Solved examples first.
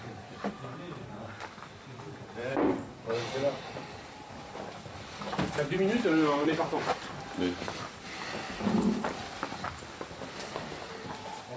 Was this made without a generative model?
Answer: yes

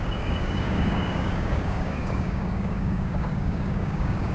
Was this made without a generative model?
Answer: no